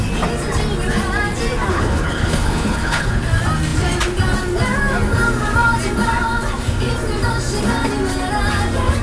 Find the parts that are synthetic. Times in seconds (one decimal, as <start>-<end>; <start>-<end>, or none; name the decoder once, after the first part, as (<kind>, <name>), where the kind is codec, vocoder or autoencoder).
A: 1.7-3.2 (codec, HILCodec)